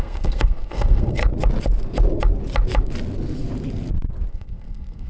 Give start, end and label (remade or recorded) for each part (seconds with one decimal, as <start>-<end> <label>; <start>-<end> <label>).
0.0-1.2 remade; 1.2-4.3 recorded; 4.3-5.1 remade